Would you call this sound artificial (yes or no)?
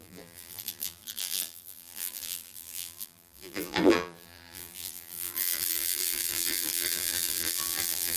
yes